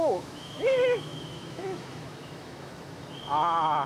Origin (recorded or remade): remade